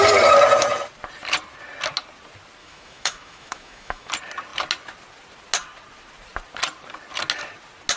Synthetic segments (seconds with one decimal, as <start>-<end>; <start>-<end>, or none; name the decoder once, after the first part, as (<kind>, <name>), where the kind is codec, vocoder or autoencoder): 2.6-4.1 (autoencoder, DAC-VAE)